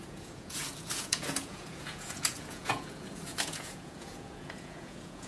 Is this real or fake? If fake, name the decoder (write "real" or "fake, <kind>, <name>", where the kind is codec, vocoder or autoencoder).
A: fake, vocoder, Vocos